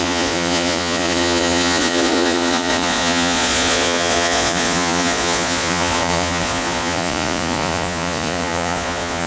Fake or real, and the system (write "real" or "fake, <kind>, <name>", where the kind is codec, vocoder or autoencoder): fake, vocoder, Vocos